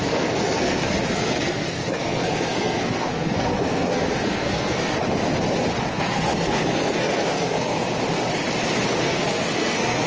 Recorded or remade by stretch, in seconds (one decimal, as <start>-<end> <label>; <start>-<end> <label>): 0.0-5.0 remade; 5.0-6.0 recorded; 6.0-7.7 remade; 7.7-9.0 recorded; 9.0-10.1 remade